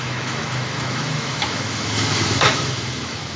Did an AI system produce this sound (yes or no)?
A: yes